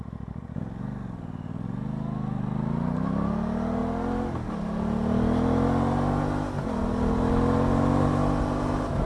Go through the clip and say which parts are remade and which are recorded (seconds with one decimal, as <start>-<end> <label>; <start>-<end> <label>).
0.0-9.1 recorded